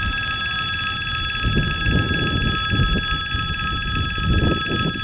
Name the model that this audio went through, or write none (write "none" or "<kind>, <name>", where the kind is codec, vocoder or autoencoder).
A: none